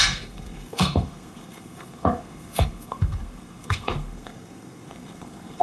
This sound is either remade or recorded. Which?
remade